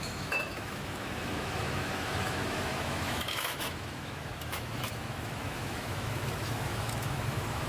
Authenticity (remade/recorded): remade